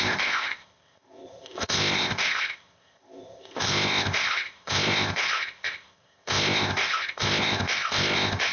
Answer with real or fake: fake